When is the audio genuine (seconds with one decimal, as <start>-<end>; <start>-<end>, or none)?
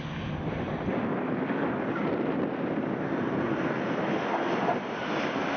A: 0.0-5.6